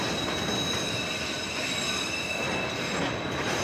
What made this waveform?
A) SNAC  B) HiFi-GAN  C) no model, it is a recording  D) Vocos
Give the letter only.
C